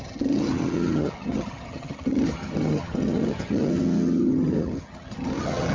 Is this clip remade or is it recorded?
remade